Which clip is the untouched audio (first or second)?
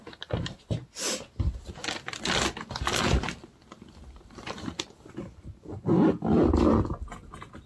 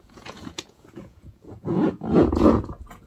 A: first